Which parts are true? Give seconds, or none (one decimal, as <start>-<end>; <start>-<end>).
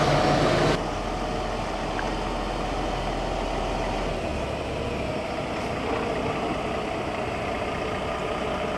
0.0-8.8